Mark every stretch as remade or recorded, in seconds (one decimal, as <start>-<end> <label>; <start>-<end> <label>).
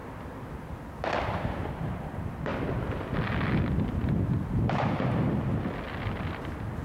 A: 0.0-2.5 recorded; 2.5-5.1 remade; 5.1-6.8 recorded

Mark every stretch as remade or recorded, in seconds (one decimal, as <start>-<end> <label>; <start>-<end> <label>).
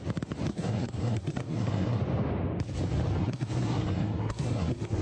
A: 0.0-0.5 recorded; 0.5-2.0 remade; 2.0-3.2 recorded; 3.2-5.0 remade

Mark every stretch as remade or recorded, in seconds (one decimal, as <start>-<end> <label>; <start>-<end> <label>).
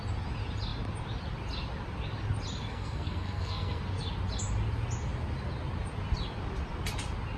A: 0.0-2.7 recorded; 2.7-3.8 remade; 3.8-7.4 recorded